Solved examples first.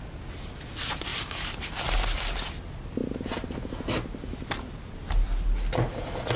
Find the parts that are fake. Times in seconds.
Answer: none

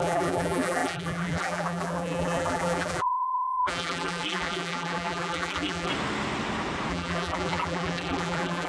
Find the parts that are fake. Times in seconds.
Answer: 0.0-5.9 (vocoder, BigVGAN v2); 6.9-8.7